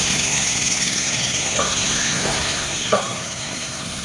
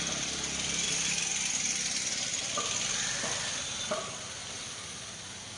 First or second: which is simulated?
first